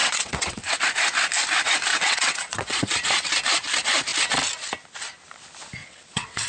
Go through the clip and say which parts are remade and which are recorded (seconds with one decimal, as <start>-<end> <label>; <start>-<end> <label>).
0.0-0.8 remade; 0.8-1.9 recorded; 1.9-2.9 remade; 2.9-5.8 recorded; 5.8-6.5 remade